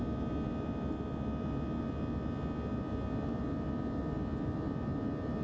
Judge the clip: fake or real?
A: real